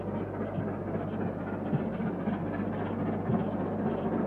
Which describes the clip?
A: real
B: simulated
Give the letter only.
A